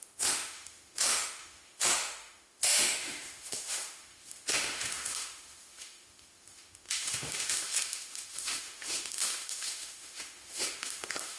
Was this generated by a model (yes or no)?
yes